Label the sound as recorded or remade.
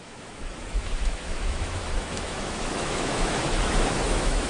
remade